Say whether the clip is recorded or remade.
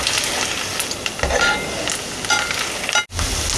recorded